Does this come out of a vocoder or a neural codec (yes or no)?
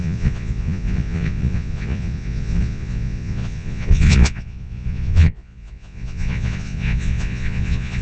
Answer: yes